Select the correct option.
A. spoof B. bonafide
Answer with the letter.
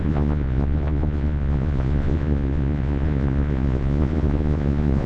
A